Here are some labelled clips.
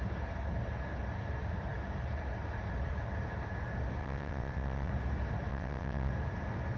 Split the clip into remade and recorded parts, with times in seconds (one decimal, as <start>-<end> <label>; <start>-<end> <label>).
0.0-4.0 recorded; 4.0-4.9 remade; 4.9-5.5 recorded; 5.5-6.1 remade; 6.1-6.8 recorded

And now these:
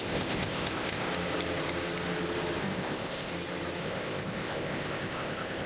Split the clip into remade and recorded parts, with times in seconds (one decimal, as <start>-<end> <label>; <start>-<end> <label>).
0.0-1.1 remade; 1.1-2.6 recorded; 2.6-3.3 remade; 3.3-3.8 recorded; 3.8-5.7 remade

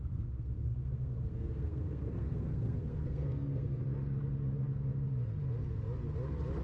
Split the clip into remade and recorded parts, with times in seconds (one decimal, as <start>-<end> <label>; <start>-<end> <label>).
0.0-3.8 remade; 3.8-6.6 recorded

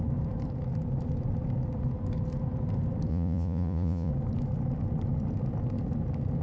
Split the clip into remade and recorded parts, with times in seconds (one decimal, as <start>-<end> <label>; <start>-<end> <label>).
0.0-3.1 recorded; 3.1-4.1 remade; 4.1-6.4 recorded

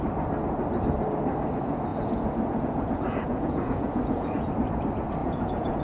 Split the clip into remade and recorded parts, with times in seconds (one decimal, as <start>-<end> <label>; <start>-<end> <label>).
0.0-1.9 recorded; 1.9-4.5 remade; 4.5-5.2 recorded; 5.2-5.8 remade

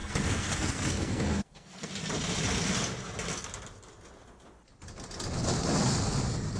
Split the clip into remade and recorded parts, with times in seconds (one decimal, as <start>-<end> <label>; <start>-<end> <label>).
0.0-1.9 remade; 1.9-6.6 recorded